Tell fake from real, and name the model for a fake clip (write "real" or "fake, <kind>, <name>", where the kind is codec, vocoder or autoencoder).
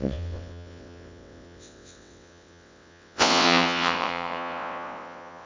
fake, vocoder, WaveNeXt